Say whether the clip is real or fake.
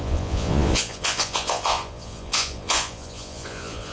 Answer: fake